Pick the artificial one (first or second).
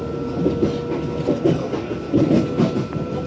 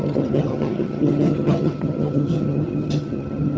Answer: second